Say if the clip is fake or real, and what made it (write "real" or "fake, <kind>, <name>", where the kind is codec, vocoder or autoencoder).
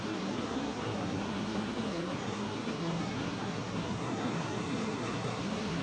fake, codec, SNAC